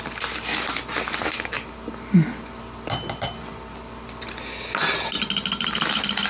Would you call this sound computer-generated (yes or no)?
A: no